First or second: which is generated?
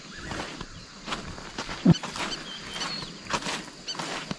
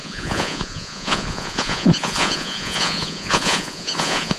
second